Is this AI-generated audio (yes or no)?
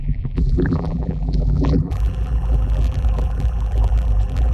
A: yes